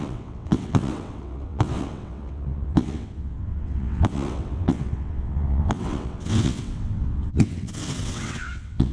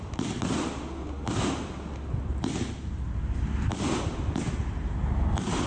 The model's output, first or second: first